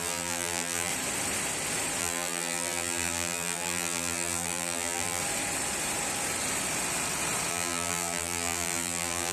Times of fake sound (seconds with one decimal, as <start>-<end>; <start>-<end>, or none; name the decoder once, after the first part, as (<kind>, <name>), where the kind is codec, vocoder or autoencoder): 0.0-0.9 (vocoder, BigVGAN v2); 2.0-5.2; 7.5-9.3